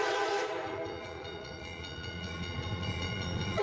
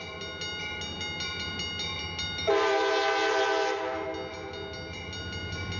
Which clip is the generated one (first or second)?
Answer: first